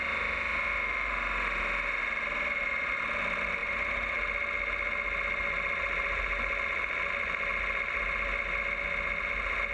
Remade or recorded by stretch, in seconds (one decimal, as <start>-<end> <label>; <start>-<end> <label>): 0.0-9.7 recorded